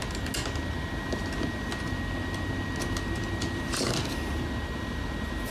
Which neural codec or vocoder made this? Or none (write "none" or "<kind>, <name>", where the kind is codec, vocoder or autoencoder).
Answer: none